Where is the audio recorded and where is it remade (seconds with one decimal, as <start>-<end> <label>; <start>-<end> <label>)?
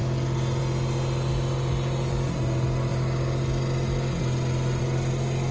0.0-5.5 recorded